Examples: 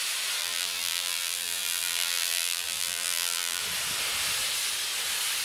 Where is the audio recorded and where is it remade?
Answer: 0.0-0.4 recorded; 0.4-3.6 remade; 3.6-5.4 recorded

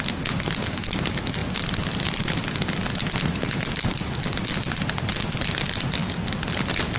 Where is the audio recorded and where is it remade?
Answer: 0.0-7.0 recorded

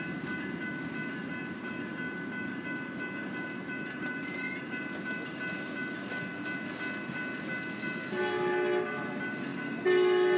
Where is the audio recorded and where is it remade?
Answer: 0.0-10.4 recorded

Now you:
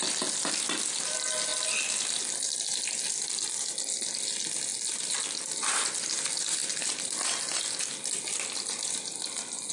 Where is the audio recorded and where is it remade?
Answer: 0.0-4.7 recorded; 4.7-5.5 remade; 5.5-9.7 recorded

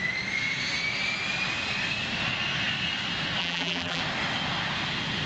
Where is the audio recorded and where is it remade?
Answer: 0.0-3.4 recorded; 3.4-4.0 remade; 4.0-5.3 recorded